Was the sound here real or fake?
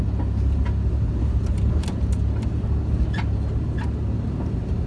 real